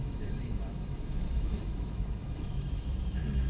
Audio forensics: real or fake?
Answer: fake